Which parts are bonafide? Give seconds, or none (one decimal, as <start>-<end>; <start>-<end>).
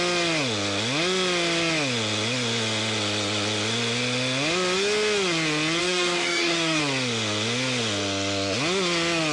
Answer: 0.0-5.8; 6.8-9.3